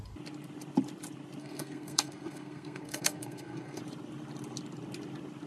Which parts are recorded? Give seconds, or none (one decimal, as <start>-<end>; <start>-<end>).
0.0-1.4; 3.8-5.5